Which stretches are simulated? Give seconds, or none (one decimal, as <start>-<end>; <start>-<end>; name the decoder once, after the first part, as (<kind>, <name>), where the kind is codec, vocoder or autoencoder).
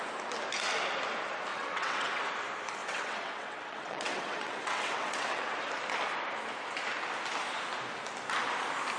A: 1.5-2.2 (vocoder, WaveNeXt); 2.8-5.5